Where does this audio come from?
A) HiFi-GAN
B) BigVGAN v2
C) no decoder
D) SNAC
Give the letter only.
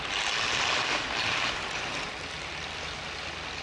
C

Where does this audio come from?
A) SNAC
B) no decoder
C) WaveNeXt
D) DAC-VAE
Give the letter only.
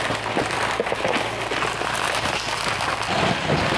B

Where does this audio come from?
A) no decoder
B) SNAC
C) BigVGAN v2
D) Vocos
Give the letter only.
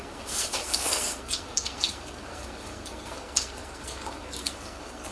B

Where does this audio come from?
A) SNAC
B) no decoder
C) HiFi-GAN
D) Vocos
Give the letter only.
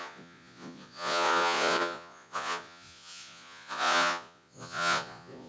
D